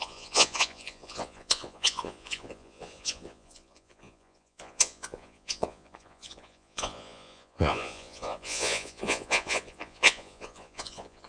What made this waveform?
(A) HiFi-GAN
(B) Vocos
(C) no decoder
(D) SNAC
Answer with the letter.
B